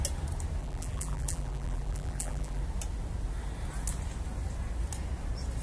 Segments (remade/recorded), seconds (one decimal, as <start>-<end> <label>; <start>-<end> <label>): 0.0-0.6 recorded; 0.6-2.6 remade; 2.6-5.6 recorded